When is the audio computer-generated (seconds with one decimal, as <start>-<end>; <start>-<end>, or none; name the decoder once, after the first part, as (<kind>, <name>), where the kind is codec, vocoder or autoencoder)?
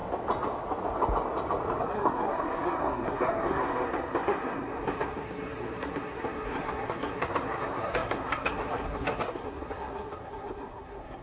1.8-11.2 (codec, SNAC)